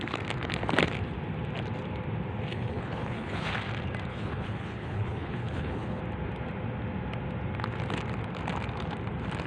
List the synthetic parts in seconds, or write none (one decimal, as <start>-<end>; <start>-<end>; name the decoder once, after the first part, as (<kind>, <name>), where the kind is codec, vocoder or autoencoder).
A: 2.5-3.5 (codec, HILCodec); 4.1-6.0